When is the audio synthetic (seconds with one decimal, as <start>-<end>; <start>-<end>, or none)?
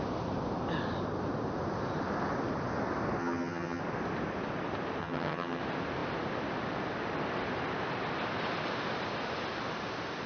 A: 3.2-3.8; 5.0-5.6